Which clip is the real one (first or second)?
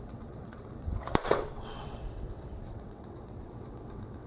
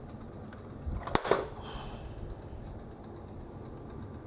second